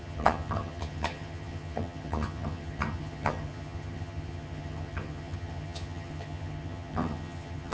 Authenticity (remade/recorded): remade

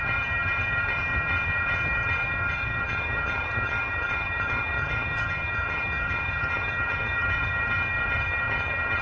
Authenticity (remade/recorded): remade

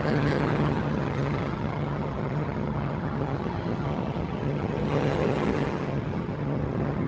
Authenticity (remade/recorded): remade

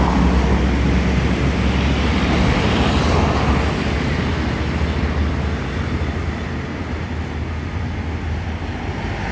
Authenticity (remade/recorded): recorded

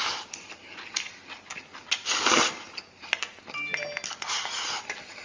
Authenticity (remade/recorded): recorded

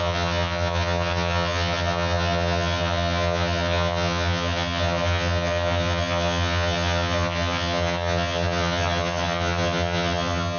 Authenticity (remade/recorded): remade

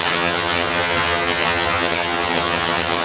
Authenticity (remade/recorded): remade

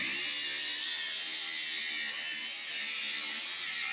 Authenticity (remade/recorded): recorded